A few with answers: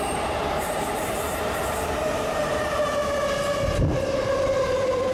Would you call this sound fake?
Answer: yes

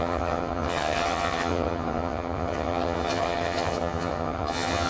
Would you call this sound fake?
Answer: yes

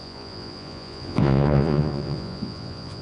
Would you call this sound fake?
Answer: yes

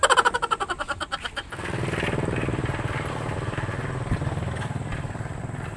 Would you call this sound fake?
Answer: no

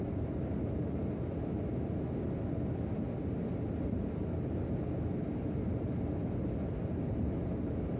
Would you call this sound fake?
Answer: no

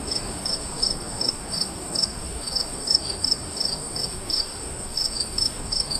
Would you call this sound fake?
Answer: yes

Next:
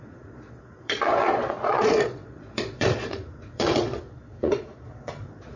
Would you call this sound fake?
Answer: yes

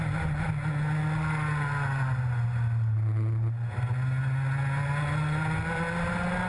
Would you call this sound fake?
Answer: no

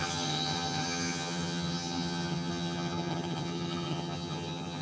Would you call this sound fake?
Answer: yes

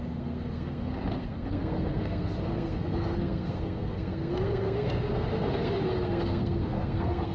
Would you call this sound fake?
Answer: yes